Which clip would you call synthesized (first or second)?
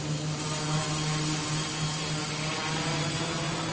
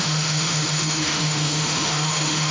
second